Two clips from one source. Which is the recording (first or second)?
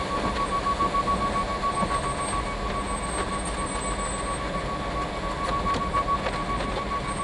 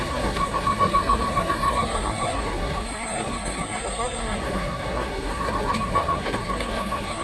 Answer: first